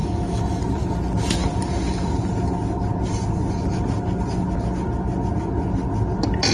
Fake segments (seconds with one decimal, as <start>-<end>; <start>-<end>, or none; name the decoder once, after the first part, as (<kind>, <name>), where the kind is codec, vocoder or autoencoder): 0.0-0.6 (autoencoder, DAC-VAE)